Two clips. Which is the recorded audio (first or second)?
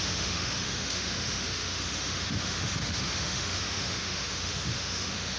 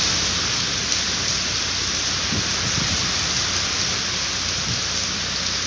second